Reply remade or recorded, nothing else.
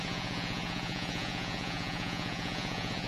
remade